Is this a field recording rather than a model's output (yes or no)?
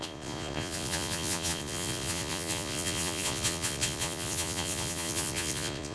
no